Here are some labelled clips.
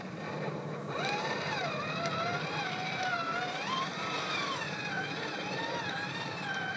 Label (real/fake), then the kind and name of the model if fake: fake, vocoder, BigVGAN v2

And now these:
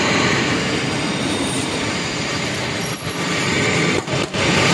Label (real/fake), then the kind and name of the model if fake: fake, vocoder, BigVGAN v2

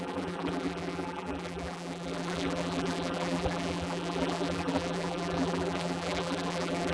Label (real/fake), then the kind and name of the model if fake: fake, vocoder, BigVGAN v2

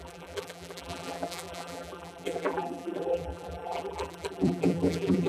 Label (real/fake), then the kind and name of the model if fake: fake, vocoder, BigVGAN v2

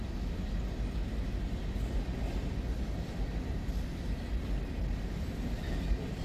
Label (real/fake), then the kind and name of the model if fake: real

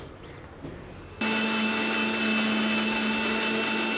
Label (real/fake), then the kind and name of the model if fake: real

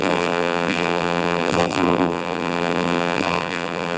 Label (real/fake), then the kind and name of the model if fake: fake, vocoder, BigVGAN v2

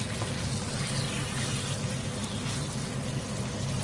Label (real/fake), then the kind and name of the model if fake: real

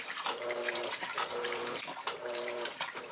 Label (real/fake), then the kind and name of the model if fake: fake, vocoder, BigVGAN v2